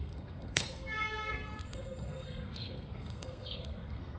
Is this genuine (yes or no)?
no